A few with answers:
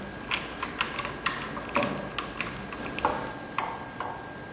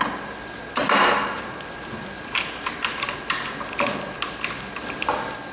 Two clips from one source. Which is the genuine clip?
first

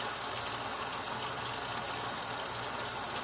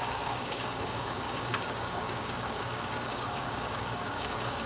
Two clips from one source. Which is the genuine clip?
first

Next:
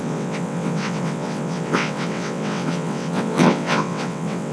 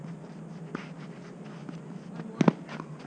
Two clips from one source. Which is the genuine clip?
second